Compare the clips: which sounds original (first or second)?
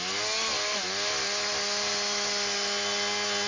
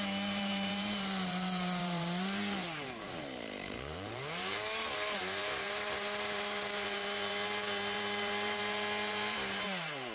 first